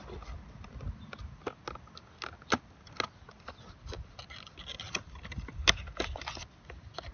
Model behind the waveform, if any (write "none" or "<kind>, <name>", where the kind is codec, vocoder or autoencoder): none